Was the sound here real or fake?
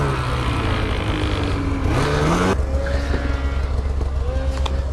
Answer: real